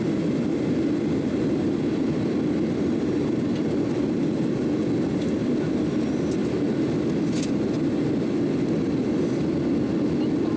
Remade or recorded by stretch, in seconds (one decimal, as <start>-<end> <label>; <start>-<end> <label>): 0.0-10.6 recorded